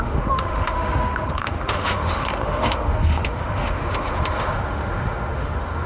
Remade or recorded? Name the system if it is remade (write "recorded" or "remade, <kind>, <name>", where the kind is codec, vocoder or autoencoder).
remade, autoencoder, DAC-VAE